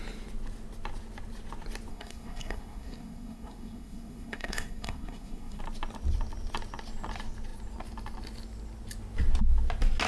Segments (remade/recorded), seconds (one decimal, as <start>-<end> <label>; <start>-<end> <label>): 0.0-1.9 recorded; 1.9-5.6 remade; 5.6-10.1 recorded